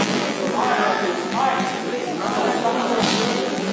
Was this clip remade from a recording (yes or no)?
yes